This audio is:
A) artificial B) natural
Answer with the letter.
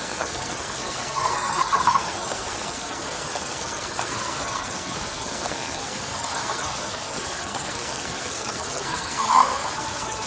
A